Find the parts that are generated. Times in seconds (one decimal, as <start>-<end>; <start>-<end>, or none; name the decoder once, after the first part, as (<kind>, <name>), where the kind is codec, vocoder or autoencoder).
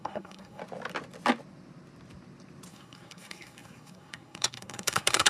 0.0-0.6 (codec, SNAC); 2.7-5.3